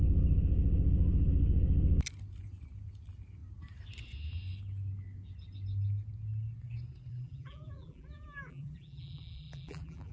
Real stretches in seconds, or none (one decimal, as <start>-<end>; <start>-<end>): 0.0-7.1